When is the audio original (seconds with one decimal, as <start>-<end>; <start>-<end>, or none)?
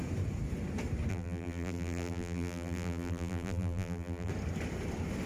0.0-1.1; 4.3-5.3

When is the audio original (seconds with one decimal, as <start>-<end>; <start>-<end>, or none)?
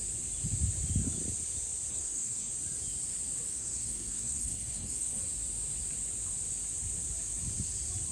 0.0-1.9; 2.5-3.5; 5.2-8.1